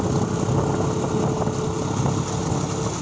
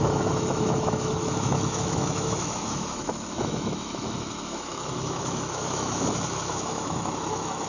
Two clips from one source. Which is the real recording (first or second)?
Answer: first